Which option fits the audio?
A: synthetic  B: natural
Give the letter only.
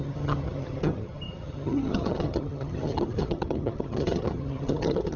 A